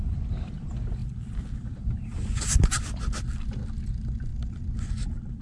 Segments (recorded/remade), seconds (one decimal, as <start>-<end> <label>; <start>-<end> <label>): 0.0-4.3 remade; 4.3-5.0 recorded; 5.0-5.4 remade